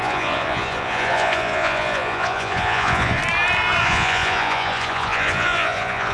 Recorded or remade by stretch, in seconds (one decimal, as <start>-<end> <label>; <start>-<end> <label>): 0.0-3.2 remade; 3.2-3.8 recorded; 3.8-6.1 remade